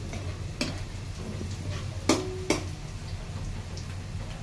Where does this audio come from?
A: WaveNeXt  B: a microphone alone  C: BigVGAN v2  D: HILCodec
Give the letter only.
B